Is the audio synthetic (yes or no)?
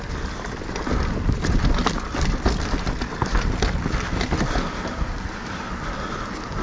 no